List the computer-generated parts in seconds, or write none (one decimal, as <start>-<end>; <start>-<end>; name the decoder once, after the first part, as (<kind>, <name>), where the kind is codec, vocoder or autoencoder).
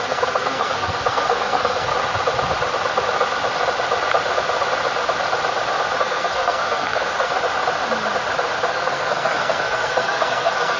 0.0-1.9 (codec, SNAC); 6.0-7.3; 8.7-10.8